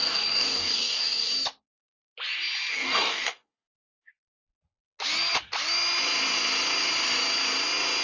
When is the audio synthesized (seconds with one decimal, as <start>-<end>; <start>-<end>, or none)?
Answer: 0.0-1.3; 2.7-4.1